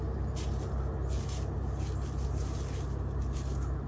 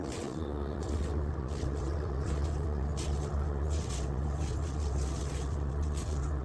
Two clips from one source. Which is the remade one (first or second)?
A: second